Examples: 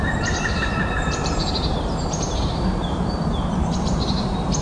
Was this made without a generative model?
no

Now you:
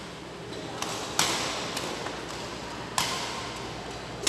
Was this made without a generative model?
yes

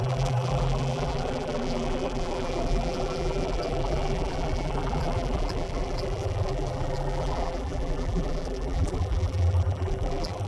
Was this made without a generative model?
no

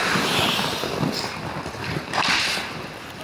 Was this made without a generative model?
no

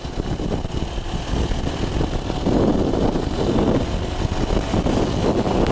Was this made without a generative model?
yes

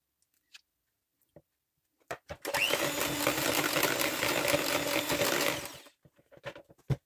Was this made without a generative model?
yes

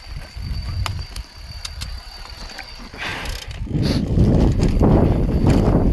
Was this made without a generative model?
yes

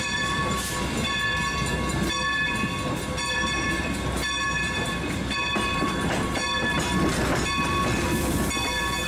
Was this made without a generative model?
no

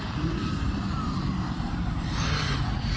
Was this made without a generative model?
no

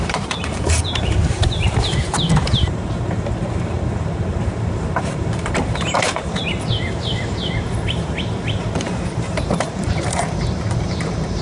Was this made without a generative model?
no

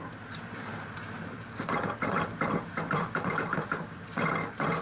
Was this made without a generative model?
no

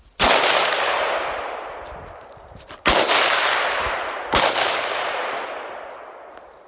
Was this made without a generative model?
yes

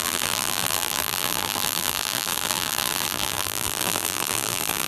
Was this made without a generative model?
no